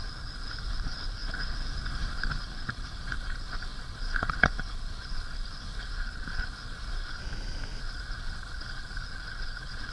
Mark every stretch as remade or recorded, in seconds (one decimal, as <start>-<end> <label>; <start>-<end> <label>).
0.0-7.2 remade; 7.2-7.8 recorded; 7.8-9.9 remade